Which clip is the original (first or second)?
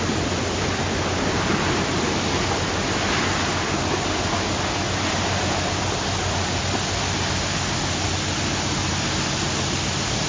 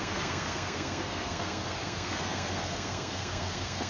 first